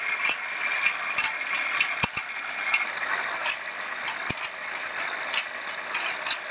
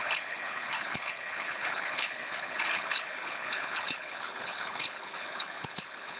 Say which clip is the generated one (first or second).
second